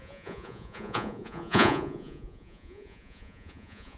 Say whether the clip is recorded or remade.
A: remade